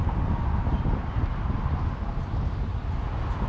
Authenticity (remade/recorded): recorded